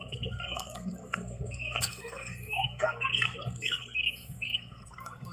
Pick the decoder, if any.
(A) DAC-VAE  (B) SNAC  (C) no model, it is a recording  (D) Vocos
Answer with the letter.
B